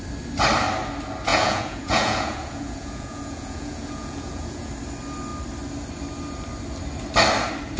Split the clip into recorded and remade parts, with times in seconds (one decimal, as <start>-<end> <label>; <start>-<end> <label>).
0.0-1.3 recorded; 1.3-4.7 remade; 4.7-7.8 recorded